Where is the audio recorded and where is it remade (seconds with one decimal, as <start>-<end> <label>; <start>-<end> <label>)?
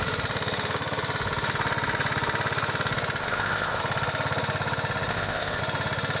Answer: 0.0-3.2 recorded; 3.2-3.8 remade; 3.8-5.1 recorded; 5.1-5.6 remade; 5.6-6.2 recorded